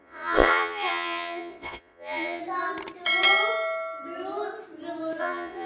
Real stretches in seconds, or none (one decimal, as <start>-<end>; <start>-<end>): 2.4-5.2